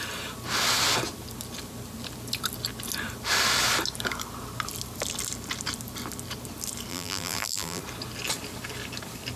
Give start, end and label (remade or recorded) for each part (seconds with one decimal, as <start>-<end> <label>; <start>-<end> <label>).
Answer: 0.0-6.9 recorded; 6.9-7.8 remade; 7.8-9.4 recorded